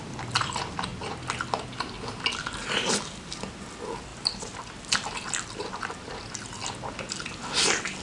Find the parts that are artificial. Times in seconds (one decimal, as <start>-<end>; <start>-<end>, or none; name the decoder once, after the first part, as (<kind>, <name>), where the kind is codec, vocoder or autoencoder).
0.0-0.9 (vocoder, BigVGAN v2); 3.0-8.0